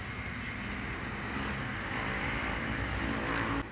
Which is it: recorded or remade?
recorded